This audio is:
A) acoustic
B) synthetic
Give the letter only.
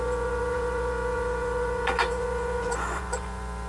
B